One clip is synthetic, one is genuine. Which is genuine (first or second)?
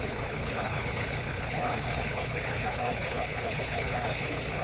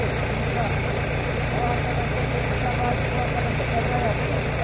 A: second